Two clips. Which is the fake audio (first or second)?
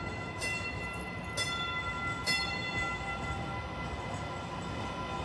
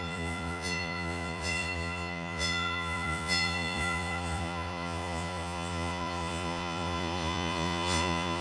second